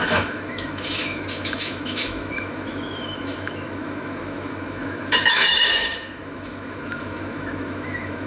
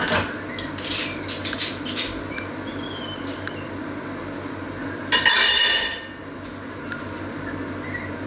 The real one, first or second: second